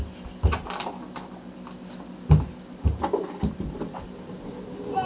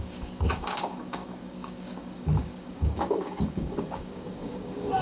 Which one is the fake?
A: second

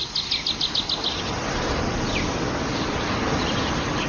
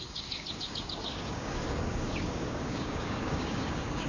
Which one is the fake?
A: second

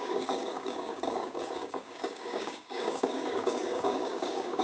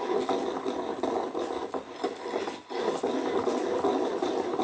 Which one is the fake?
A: first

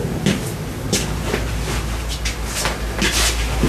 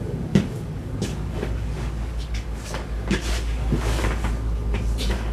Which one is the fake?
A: second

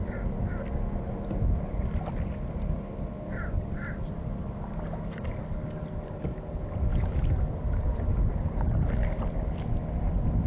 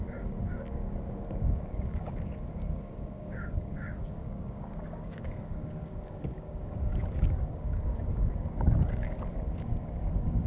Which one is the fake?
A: second